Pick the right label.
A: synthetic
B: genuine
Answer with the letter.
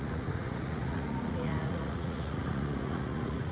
A